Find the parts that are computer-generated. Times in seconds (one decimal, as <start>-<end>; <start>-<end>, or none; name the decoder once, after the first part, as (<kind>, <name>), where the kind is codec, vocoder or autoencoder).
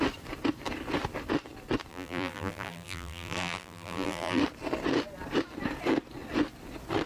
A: 1.9-4.4 (vocoder, BigVGAN v2)